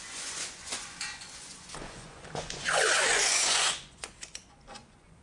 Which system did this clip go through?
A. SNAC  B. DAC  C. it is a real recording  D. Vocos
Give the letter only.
D